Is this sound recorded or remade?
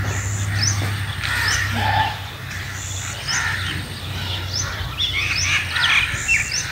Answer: remade